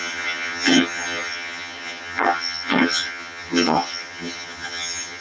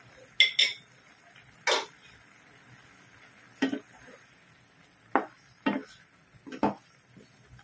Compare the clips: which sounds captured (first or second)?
second